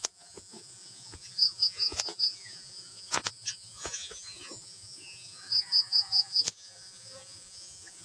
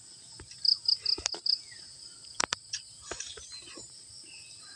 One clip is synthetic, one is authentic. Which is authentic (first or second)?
second